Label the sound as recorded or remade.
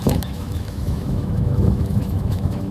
remade